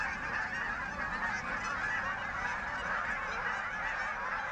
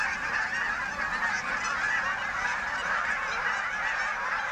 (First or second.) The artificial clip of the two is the second